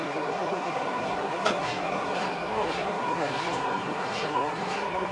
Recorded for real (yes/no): no